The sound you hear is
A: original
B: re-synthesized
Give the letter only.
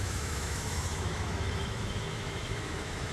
B